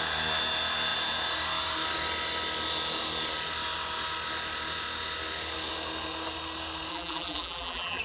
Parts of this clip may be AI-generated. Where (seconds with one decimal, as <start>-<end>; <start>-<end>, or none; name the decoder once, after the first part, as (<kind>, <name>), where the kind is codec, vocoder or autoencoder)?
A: 6.9-8.0 (vocoder, BigVGAN v2)